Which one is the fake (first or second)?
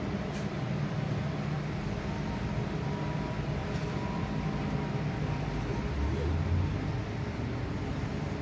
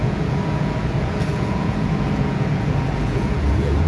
second